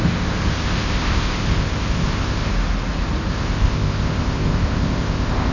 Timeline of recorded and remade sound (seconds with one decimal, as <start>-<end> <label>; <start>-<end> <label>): 0.0-2.5 remade; 2.5-3.3 recorded; 3.3-5.5 remade